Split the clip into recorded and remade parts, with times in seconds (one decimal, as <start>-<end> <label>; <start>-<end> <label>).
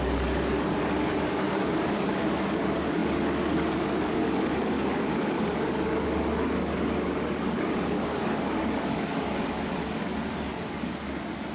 0.0-11.5 remade